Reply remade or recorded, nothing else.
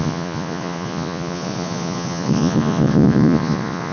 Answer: remade